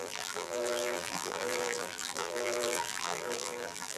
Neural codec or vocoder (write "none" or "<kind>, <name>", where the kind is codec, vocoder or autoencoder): vocoder, BigVGAN v2